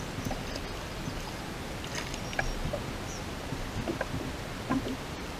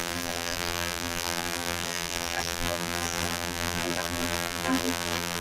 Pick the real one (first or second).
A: first